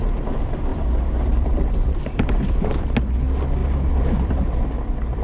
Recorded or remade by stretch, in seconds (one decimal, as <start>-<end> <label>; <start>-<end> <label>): 0.0-0.7 recorded; 0.7-1.6 remade; 1.6-3.6 recorded; 3.6-5.2 remade